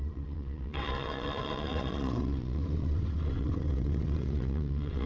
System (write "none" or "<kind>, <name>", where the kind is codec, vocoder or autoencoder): vocoder, WaveNeXt